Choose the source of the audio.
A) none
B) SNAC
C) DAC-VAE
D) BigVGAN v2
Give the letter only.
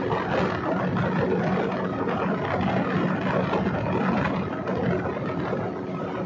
A